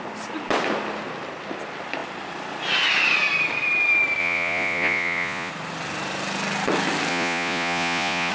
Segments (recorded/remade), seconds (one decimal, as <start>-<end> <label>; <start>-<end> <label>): 0.0-4.2 recorded; 4.2-5.5 remade; 5.5-7.1 recorded; 7.1-8.3 remade

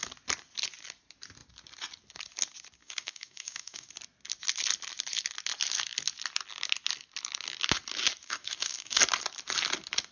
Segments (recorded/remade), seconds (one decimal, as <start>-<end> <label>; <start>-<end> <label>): 0.0-2.8 recorded; 2.8-3.9 remade; 3.9-8.2 recorded; 8.2-9.0 remade; 9.0-10.1 recorded

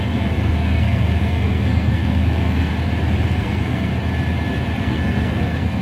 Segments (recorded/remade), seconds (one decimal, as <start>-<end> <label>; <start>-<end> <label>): 0.0-2.7 remade; 2.7-3.3 recorded; 3.3-3.9 remade; 3.9-4.8 recorded; 4.8-5.8 remade

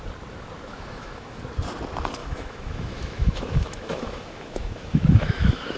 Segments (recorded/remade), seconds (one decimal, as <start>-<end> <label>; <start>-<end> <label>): 0.0-0.7 recorded; 0.7-1.4 remade; 1.4-2.2 recorded; 2.2-5.8 remade

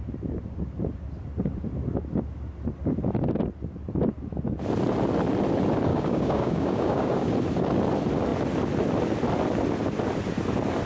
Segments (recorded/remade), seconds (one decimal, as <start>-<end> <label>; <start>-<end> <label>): 0.0-5.9 recorded; 5.9-7.3 remade; 7.3-10.9 recorded

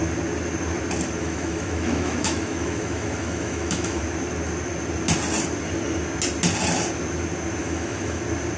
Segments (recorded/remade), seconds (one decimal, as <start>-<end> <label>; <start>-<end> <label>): 0.0-1.2 recorded; 1.2-4.0 remade; 4.0-7.6 recorded; 7.6-8.2 remade; 8.2-8.6 recorded